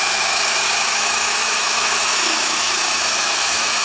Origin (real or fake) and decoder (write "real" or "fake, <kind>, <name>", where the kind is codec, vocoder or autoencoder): fake, autoencoder, DAC-VAE